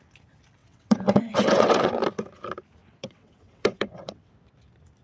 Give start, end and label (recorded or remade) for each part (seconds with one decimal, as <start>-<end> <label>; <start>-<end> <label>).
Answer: 0.0-0.6 recorded; 0.6-1.9 remade; 1.9-2.8 recorded; 2.8-4.3 remade; 4.3-5.0 recorded